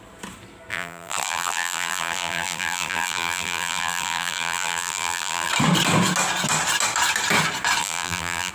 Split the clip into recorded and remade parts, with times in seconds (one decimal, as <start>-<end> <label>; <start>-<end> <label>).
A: 0.0-0.7 recorded; 0.7-5.5 remade; 5.5-7.8 recorded; 7.8-8.5 remade